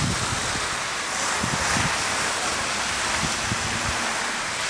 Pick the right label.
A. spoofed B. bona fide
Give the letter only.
B